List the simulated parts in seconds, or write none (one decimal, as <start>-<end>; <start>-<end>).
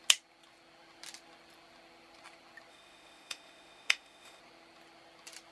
2.7-4.4